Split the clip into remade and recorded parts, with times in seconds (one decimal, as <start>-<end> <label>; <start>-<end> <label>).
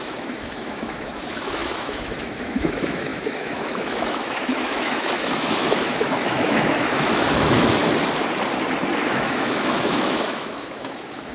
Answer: 0.0-7.8 remade; 7.8-9.1 recorded; 9.1-11.3 remade